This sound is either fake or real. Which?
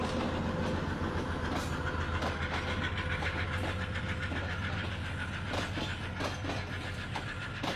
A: real